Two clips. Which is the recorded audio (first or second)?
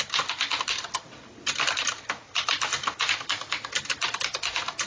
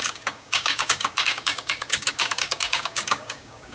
first